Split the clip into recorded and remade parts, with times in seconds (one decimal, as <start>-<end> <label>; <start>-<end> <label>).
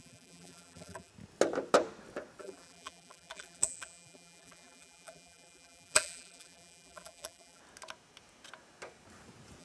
0.0-1.1 remade; 1.1-2.4 recorded; 2.4-7.6 remade; 7.6-9.6 recorded